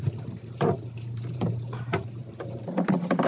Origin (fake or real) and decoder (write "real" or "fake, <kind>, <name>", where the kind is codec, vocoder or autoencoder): fake, vocoder, BigVGAN v2